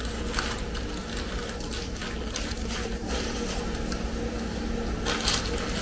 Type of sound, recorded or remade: recorded